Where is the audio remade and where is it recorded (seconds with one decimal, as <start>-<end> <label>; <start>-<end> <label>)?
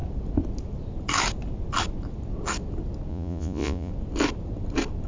0.0-3.1 recorded; 3.1-3.9 remade; 3.9-5.1 recorded